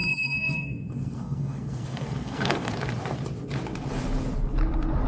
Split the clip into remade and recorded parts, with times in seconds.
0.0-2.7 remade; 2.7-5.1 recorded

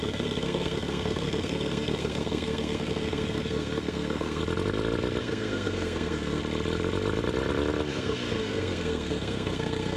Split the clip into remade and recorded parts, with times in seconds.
0.0-4.4 remade; 4.4-5.2 recorded; 5.2-6.4 remade; 6.4-7.9 recorded; 7.9-10.0 remade

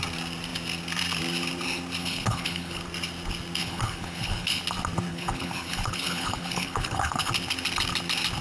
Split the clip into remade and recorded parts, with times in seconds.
0.0-2.0 recorded; 2.0-2.8 remade; 2.8-3.6 recorded; 3.6-4.6 remade; 4.6-5.1 recorded; 5.1-7.3 remade; 7.3-8.4 recorded

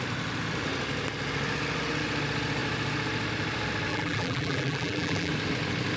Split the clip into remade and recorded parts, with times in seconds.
0.0-3.9 recorded; 3.9-5.3 remade; 5.3-6.0 recorded

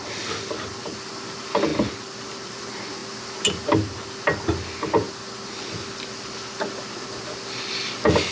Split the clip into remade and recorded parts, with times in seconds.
0.0-1.7 recorded; 1.7-2.6 remade; 2.6-8.3 recorded